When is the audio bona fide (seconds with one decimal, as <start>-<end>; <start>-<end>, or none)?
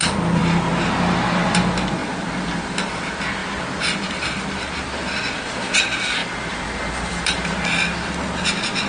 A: 0.0-8.9